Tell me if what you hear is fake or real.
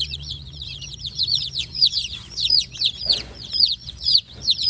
fake